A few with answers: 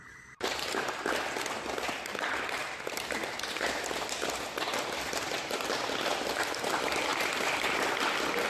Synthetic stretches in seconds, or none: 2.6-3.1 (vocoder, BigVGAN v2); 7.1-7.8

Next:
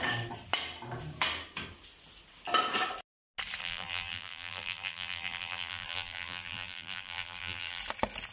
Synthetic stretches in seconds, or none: 3.6-7.8 (vocoder, BigVGAN v2)

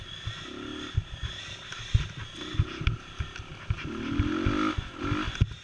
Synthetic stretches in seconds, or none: none

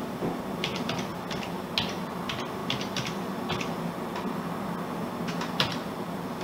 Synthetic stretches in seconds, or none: none